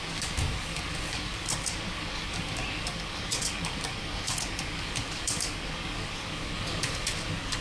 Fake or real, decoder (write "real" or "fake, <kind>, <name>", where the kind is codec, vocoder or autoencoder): fake, codec, DAC